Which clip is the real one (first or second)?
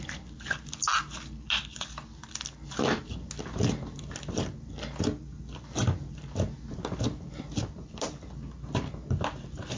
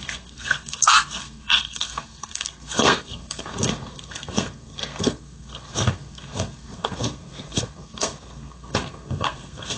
first